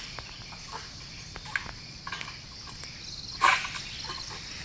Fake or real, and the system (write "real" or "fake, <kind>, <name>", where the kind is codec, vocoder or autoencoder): real